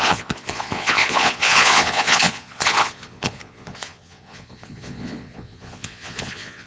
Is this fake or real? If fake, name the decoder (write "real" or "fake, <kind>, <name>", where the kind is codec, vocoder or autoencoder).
fake, vocoder, Vocos